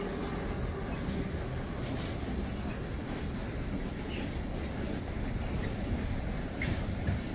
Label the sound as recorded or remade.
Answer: recorded